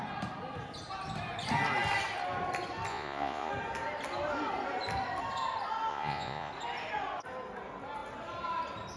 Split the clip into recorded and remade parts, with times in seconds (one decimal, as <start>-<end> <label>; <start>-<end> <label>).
0.0-2.9 recorded; 2.9-3.5 remade; 3.5-5.9 recorded; 5.9-6.5 remade; 6.5-9.0 recorded

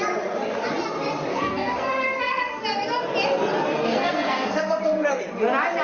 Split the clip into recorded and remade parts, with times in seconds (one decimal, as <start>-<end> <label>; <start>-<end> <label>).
0.0-1.3 recorded; 1.3-2.6 remade; 2.6-3.7 recorded; 3.7-5.2 remade; 5.2-5.8 recorded

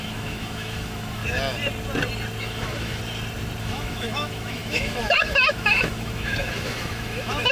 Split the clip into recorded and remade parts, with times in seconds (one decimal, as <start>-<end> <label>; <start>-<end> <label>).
0.0-1.2 remade; 1.2-2.4 recorded; 2.4-3.0 remade; 3.0-3.6 recorded; 3.6-7.5 remade

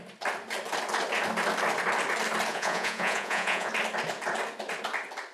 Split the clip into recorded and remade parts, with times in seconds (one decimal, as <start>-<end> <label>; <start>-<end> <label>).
0.0-2.5 recorded; 2.5-3.7 remade; 3.7-5.3 recorded